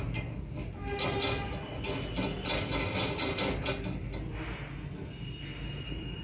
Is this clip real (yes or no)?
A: yes